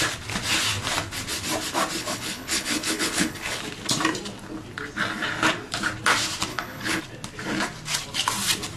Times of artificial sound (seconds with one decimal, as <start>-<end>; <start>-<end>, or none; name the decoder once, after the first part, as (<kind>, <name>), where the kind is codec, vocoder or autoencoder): 2.0-3.6 (codec, HILCodec); 6.5-7.0

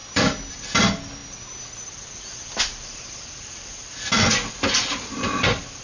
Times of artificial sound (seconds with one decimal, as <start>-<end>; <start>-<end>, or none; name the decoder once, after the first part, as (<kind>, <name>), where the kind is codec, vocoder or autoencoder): 0.0-0.5 (vocoder, BigVGAN v2)